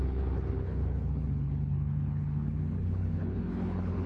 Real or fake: fake